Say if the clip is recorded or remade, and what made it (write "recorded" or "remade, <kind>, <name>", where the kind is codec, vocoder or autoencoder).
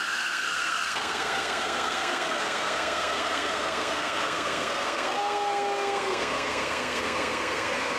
remade, codec, SNAC